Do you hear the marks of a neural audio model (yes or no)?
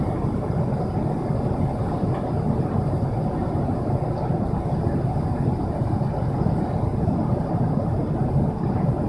no